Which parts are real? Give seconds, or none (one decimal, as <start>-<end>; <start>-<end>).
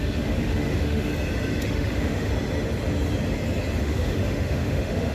1.1-1.6; 2.3-3.8